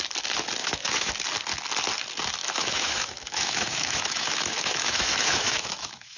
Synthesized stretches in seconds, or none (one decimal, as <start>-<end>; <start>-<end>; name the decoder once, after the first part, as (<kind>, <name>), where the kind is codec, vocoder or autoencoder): 0.6-1.1 (autoencoder, DAC-VAE); 2.4-6.2

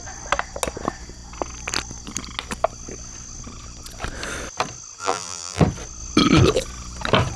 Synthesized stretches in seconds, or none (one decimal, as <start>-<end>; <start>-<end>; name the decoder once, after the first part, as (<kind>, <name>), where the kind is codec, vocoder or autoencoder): 5.0-5.6 (vocoder, BigVGAN v2)

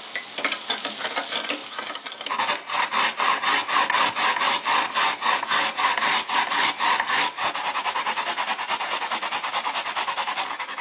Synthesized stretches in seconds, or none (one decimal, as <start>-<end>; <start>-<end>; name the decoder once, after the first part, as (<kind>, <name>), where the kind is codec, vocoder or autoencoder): none